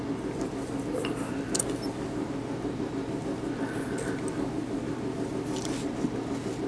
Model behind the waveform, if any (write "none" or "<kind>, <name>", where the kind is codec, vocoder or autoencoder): none